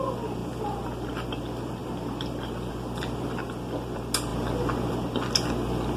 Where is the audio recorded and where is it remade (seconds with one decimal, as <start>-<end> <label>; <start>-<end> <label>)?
0.0-6.0 recorded